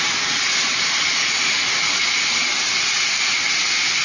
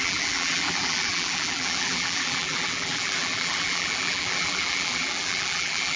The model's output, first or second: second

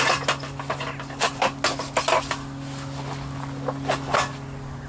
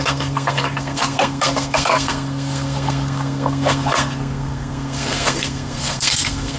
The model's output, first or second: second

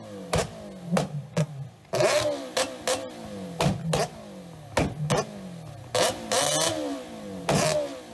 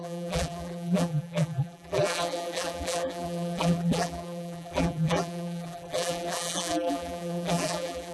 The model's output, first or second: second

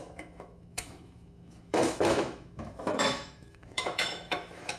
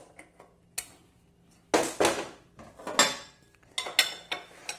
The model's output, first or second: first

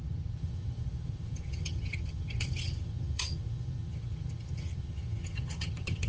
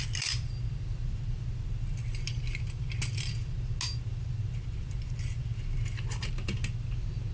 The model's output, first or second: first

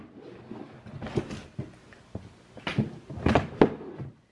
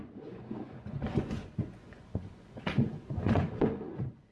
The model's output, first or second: second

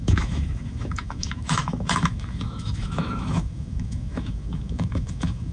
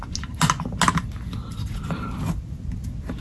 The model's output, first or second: first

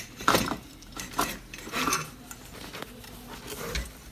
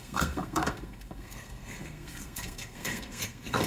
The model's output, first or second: second